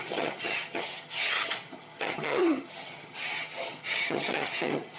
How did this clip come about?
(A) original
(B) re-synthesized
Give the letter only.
B